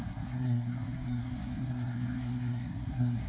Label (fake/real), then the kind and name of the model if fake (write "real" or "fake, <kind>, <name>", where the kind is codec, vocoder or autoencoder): fake, codec, SNAC